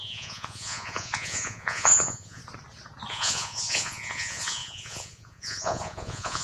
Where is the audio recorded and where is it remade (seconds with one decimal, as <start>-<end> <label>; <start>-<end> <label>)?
0.0-2.4 remade; 2.4-3.1 recorded; 3.1-6.4 remade